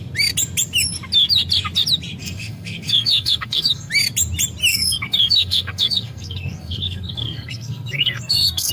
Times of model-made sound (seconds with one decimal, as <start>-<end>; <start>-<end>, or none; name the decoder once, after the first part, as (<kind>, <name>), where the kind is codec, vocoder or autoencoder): 2.2-3.9 (codec, SNAC); 4.7-8.7